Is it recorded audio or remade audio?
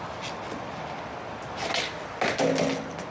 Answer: recorded